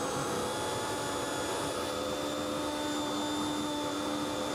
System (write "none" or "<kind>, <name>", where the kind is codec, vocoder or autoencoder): none